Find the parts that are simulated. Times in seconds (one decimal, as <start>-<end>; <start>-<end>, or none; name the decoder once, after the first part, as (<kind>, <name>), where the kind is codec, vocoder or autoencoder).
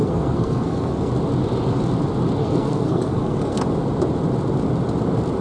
0.0-1.1 (codec, SNAC); 2.4-3.6